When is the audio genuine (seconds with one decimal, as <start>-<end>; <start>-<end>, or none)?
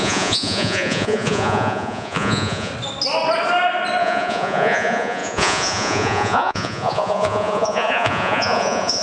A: 2.7-4.0